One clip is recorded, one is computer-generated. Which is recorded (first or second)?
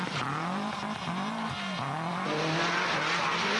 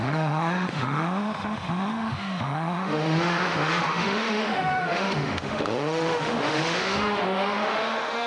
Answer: first